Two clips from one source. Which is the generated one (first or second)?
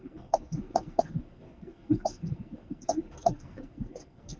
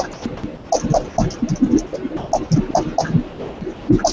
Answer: first